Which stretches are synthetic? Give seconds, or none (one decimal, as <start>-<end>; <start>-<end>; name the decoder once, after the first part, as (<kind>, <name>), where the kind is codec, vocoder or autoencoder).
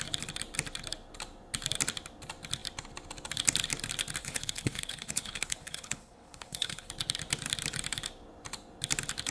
4.2-6.9 (codec, HILCodec)